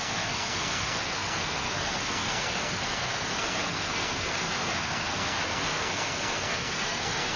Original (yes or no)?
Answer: no